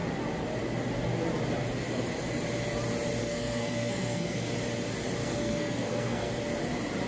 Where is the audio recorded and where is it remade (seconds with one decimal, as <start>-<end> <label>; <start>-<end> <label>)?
0.0-3.2 recorded; 3.2-4.5 remade; 4.5-5.2 recorded; 5.2-6.3 remade; 6.3-7.1 recorded